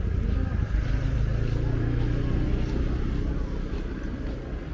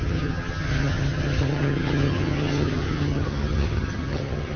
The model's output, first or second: second